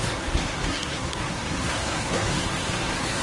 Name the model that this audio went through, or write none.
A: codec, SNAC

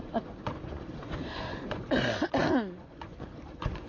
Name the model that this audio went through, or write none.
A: vocoder, Vocos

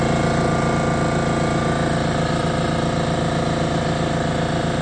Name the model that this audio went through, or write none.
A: none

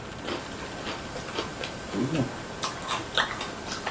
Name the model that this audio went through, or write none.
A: none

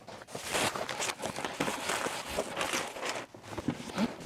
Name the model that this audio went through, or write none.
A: none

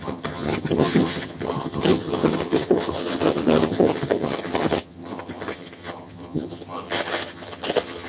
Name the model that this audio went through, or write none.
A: vocoder, HiFi-GAN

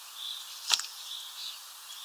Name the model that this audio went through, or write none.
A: none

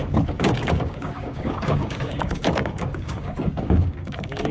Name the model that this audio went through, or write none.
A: codec, DAC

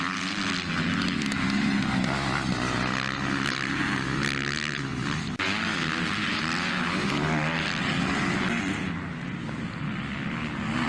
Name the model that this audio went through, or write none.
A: none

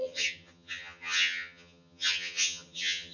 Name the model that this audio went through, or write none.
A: vocoder, HiFi-GAN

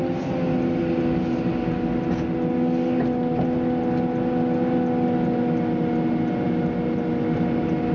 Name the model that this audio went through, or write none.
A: none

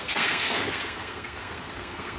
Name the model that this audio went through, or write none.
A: codec, SNAC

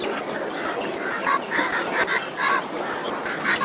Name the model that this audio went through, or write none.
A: none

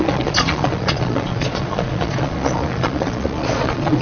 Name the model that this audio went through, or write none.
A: vocoder, Vocos